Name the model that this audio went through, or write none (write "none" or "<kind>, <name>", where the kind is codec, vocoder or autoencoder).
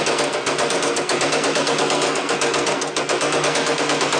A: codec, SNAC